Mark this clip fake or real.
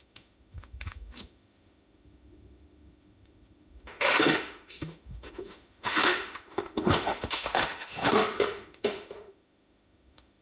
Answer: fake